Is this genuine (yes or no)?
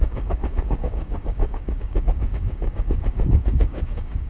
no